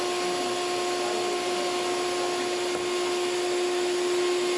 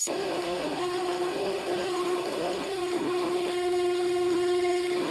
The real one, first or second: first